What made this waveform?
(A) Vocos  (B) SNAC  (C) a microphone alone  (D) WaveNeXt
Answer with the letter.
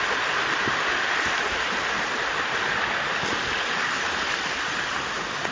C